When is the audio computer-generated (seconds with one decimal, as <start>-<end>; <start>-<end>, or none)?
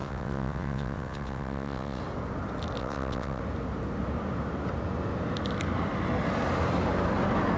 0.0-2.0; 2.8-3.4